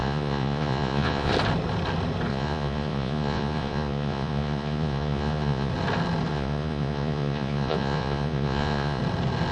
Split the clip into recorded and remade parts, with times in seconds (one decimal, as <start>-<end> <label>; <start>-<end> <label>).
0.0-1.3 remade; 1.3-2.3 recorded; 2.3-5.7 remade; 5.7-6.3 recorded; 6.3-9.0 remade; 9.0-9.5 recorded

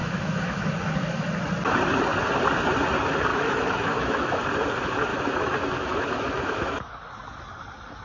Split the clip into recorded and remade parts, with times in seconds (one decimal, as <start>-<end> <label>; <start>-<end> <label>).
0.0-1.3 remade; 1.3-3.3 recorded; 3.3-4.4 remade; 4.4-5.1 recorded; 5.1-6.9 remade; 6.9-8.0 recorded

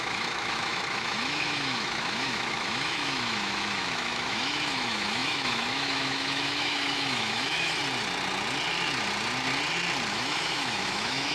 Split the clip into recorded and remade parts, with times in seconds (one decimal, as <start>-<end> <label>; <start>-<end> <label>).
0.0-7.8 remade; 7.8-10.1 recorded; 10.1-11.3 remade

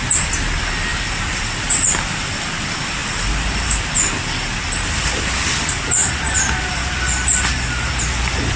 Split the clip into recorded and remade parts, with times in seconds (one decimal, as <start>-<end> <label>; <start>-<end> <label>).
0.0-0.9 recorded; 0.9-2.4 remade; 2.4-3.0 recorded; 3.0-3.8 remade; 3.8-8.6 recorded

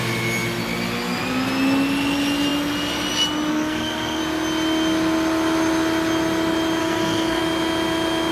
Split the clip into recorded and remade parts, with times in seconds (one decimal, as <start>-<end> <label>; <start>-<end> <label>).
0.0-3.5 recorded; 3.5-4.2 remade; 4.2-6.8 recorded; 6.8-7.4 remade; 7.4-8.3 recorded

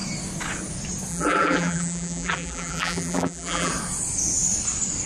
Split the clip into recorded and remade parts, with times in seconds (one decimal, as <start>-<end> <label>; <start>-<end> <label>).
0.0-1.1 recorded; 1.1-3.7 remade; 3.7-5.1 recorded